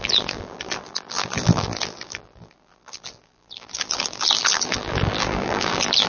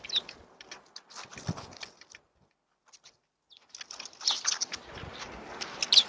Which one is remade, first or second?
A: first